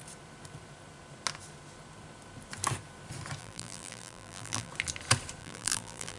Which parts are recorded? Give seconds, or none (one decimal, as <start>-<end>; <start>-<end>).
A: 0.0-3.4; 4.7-5.4